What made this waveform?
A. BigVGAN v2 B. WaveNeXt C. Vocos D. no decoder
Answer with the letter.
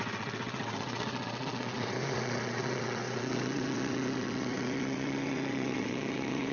B